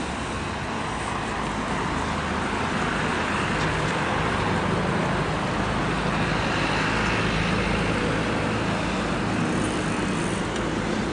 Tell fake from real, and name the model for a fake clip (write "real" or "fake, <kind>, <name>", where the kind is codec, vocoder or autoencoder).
real